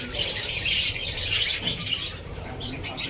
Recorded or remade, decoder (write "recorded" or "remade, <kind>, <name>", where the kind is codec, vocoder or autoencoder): remade, vocoder, BigVGAN v2